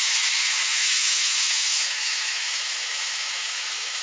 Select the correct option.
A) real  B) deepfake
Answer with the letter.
B